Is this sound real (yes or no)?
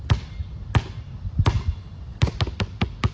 yes